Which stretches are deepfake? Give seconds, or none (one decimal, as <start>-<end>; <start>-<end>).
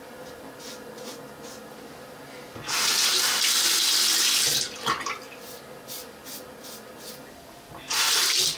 none